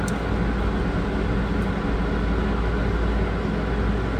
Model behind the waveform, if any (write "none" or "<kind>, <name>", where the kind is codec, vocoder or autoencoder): none